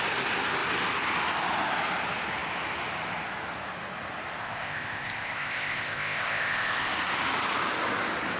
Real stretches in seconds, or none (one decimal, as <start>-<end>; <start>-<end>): 0.0-4.4; 6.9-8.4